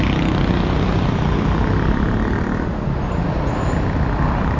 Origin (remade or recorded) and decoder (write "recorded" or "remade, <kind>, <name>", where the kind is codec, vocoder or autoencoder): recorded